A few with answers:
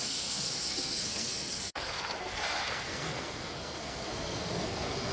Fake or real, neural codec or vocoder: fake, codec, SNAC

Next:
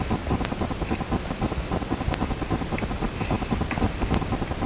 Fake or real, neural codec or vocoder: real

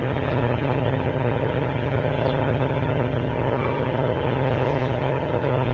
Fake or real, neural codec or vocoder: fake, vocoder, HiFi-GAN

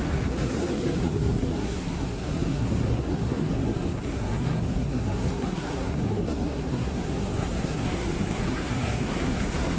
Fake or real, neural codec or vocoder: fake, codec, SNAC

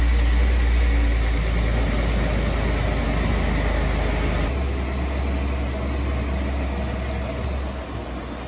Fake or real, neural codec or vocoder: real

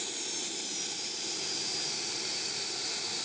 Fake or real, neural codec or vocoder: fake, vocoder, BigVGAN v2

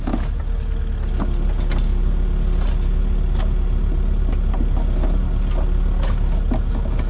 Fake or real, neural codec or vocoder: real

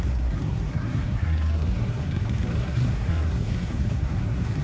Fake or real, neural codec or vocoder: fake, codec, SNAC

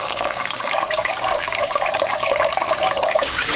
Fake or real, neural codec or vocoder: fake, codec, DAC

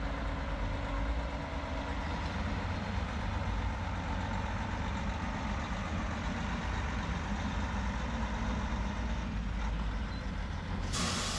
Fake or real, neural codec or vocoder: real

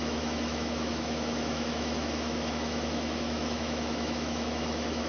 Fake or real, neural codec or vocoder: fake, autoencoder, DAC-VAE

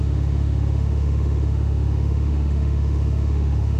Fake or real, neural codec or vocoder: fake, autoencoder, DAC-VAE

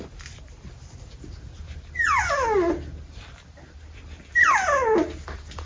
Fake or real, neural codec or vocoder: real